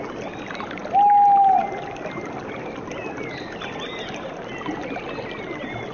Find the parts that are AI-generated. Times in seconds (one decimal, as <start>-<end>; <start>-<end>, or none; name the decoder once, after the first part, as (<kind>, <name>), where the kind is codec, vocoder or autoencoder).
none